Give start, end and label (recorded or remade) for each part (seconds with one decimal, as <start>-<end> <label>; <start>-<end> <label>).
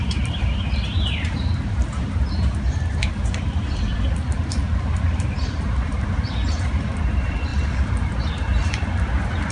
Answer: 0.0-9.5 remade